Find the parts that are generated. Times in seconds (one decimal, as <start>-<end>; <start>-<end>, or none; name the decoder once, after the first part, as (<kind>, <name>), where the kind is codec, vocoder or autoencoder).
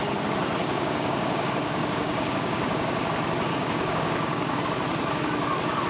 0.6-3.1 (codec, DAC); 3.5-4.6